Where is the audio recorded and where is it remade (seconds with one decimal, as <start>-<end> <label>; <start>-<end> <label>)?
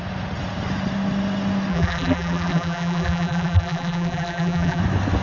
0.0-1.7 recorded; 1.7-4.8 remade; 4.8-5.2 recorded